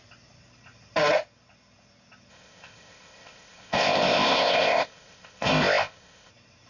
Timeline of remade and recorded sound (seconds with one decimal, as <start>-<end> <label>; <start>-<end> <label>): 0.0-2.3 recorded; 2.3-6.3 remade; 6.3-6.7 recorded